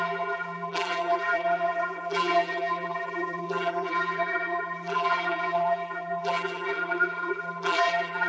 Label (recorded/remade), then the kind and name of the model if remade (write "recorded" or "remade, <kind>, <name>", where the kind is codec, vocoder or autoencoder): remade, vocoder, BigVGAN v2